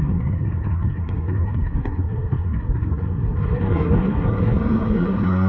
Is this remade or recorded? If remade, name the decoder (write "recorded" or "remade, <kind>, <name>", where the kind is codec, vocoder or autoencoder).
remade, codec, SNAC